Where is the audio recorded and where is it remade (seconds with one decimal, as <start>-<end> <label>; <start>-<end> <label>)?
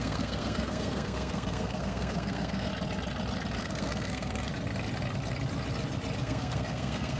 0.0-2.7 remade; 2.7-3.6 recorded; 3.6-4.5 remade; 4.5-6.2 recorded; 6.2-7.2 remade